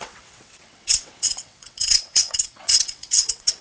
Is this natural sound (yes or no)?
no